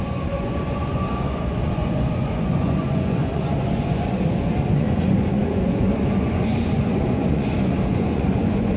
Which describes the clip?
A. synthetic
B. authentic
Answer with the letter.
A